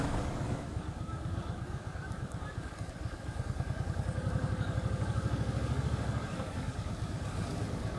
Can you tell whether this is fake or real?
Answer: fake